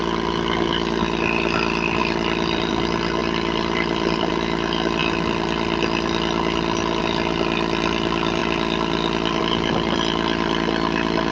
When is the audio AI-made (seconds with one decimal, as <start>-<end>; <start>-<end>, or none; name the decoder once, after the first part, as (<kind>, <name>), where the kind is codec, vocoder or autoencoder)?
2.0-2.7 (vocoder, BigVGAN v2); 3.2-4.3